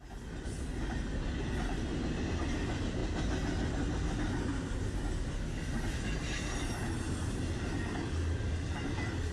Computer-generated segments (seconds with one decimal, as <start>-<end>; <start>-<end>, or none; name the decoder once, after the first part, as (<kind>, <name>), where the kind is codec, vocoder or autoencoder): none

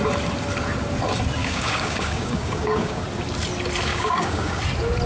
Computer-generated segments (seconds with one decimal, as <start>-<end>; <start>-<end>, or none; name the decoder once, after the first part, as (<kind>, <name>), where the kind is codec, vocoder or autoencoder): 1.4-3.0 (codec, DAC); 3.9-4.6